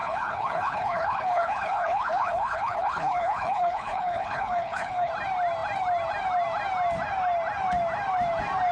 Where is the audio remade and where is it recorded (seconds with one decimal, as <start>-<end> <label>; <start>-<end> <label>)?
0.0-5.1 remade; 5.1-8.7 recorded